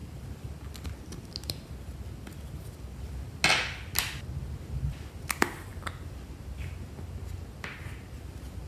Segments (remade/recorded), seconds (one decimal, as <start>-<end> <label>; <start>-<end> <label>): 0.0-8.7 recorded